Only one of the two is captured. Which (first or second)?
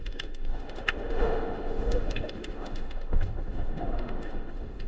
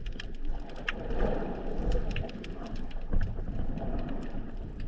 second